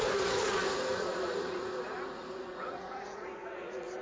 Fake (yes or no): yes